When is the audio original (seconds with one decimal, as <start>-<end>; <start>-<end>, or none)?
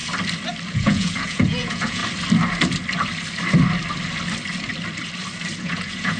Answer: 0.0-0.7; 2.0-5.6